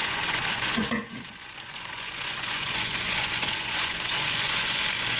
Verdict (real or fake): fake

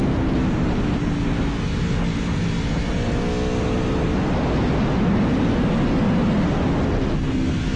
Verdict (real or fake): real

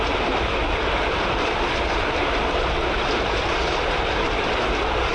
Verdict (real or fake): real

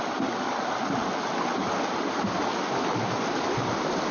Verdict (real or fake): real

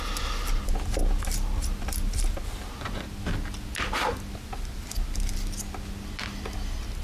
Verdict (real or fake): real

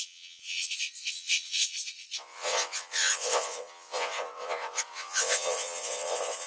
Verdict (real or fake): fake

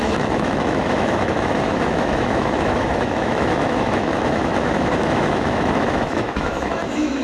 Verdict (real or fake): fake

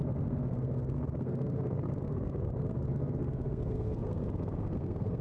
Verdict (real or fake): fake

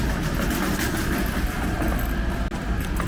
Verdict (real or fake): real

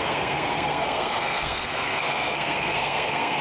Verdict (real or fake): fake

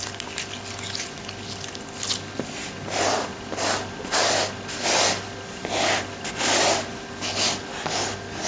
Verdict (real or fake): real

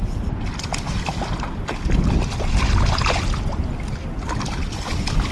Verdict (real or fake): real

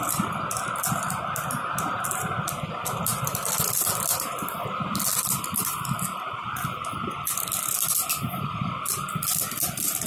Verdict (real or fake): real